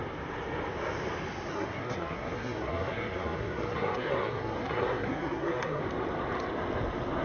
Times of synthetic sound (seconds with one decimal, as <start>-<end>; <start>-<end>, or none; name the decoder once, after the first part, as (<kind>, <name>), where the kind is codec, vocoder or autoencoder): 1.5-5.8 (codec, SNAC)

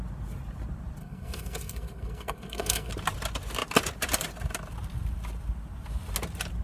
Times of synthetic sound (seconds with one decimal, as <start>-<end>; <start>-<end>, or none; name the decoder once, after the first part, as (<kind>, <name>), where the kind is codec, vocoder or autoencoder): 1.0-2.9 (codec, SNAC)

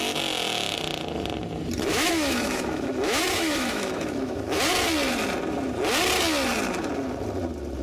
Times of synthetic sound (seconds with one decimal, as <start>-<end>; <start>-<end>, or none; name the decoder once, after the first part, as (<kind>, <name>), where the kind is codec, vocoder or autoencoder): 1.9-4.6 (autoencoder, DAC-VAE)

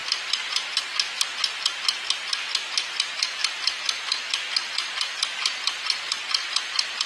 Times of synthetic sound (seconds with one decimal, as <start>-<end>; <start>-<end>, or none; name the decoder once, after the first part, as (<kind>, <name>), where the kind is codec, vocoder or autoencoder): 0.0-0.7 (vocoder, BigVGAN v2); 2.8-7.1

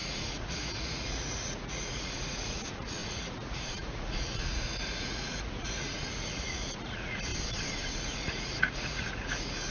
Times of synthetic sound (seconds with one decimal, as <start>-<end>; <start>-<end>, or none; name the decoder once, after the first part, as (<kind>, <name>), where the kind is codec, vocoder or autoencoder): 0.0-7.3 (vocoder, Vocos); 7.9-9.7

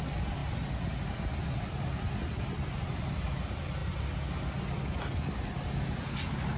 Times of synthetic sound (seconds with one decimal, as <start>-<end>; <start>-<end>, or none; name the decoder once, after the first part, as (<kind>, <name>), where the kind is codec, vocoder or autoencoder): none

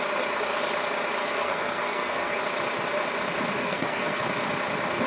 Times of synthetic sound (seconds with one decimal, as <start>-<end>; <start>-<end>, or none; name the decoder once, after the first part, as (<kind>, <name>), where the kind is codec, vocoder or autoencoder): 1.2-2.4 (codec, SNAC); 3.6-4.2